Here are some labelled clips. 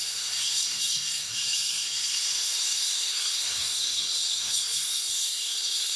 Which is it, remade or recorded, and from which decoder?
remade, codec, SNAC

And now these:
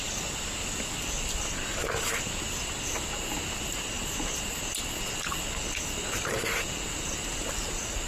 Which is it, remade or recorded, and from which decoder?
recorded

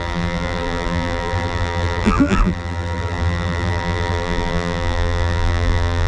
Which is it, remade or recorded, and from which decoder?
remade, vocoder, BigVGAN v2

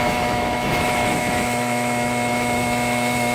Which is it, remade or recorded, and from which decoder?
remade, autoencoder, DAC-VAE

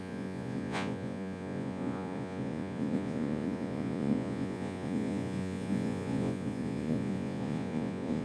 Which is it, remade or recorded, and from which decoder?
remade, vocoder, Vocos